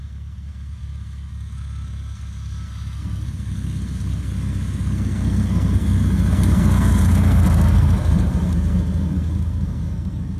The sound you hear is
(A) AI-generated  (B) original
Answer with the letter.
A